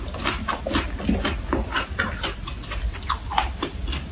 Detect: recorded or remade recorded